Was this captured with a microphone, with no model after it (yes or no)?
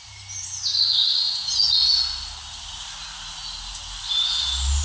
yes